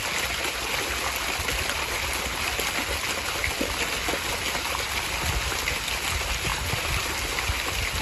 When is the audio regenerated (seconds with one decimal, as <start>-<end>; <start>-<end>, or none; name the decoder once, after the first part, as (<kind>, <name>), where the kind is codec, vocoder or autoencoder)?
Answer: 6.5-7.1 (vocoder, BigVGAN v2)